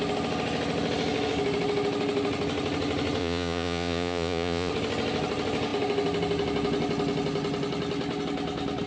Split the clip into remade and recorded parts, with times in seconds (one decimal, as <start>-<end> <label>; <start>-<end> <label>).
0.0-3.2 recorded; 3.2-4.7 remade; 4.7-8.9 recorded